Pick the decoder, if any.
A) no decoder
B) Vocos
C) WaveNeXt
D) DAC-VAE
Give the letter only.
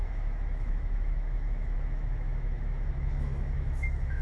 D